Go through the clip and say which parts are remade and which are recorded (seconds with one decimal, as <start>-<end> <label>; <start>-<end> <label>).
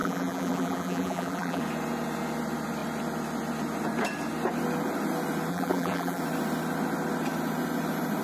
0.0-1.6 remade; 1.6-5.5 recorded; 5.5-6.2 remade; 6.2-8.2 recorded